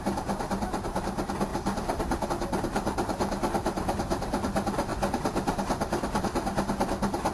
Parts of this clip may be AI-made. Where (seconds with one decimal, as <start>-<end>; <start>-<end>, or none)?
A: 1.5-2.3